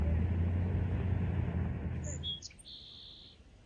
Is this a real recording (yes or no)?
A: yes